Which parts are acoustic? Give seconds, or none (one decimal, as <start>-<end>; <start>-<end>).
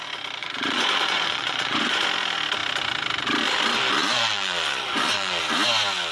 0.0-0.4; 2.0-4.0; 5.4-6.1